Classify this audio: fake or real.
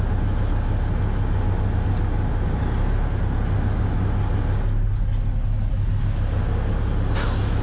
real